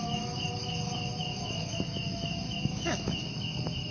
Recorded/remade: remade